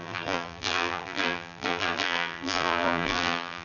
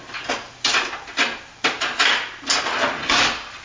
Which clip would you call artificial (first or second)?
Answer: first